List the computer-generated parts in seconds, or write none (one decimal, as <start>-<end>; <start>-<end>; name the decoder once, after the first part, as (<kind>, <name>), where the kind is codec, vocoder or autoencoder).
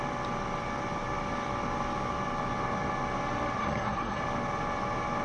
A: 3.6-4.2 (codec, SNAC)